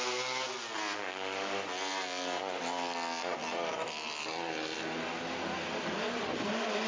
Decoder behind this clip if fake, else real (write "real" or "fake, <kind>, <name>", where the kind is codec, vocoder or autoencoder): real